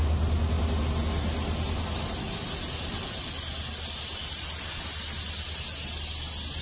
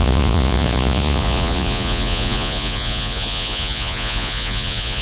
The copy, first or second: second